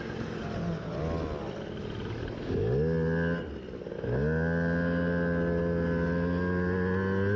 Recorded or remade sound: recorded